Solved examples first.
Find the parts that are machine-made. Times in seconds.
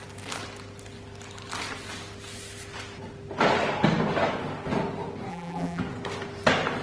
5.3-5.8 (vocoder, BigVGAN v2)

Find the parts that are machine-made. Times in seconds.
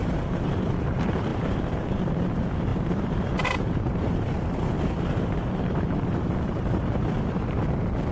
0.0-0.7 (vocoder, BigVGAN v2); 1.3-2.2; 2.7-7.6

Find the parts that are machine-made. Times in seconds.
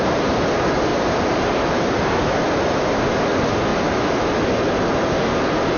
0.9-2.4 (vocoder, BigVGAN v2); 3.7-4.5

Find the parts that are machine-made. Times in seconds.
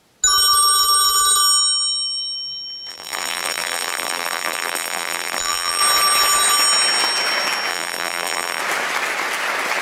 2.9-5.8 (vocoder, BigVGAN v2); 7.7-8.6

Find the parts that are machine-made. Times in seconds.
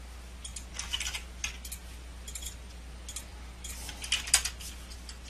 none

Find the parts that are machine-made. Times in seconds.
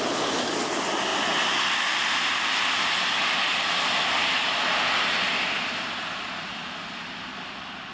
none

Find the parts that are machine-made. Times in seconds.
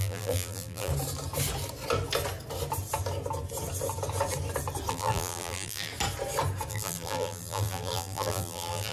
0.0-0.9 (vocoder, BigVGAN v2); 4.9-5.9; 6.7-8.9